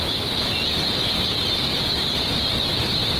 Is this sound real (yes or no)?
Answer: no